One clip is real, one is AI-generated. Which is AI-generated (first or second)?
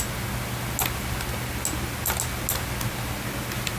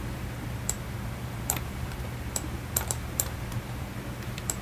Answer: second